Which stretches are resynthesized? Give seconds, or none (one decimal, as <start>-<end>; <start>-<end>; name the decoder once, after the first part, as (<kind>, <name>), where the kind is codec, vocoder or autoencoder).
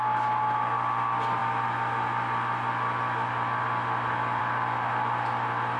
none